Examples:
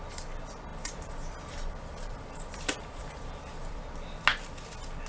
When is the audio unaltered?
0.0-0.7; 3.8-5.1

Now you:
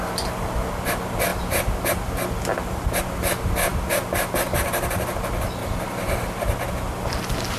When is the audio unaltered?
0.0-5.6; 6.4-7.6